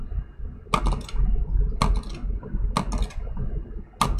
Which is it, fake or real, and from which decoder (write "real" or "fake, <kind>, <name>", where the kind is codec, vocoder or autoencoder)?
real